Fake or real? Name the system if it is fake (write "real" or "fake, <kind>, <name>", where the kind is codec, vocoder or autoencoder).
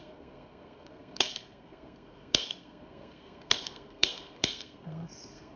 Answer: fake, codec, SNAC